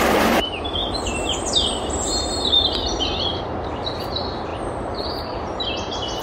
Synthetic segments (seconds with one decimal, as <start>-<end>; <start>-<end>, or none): none